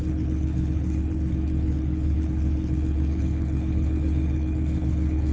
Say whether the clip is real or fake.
fake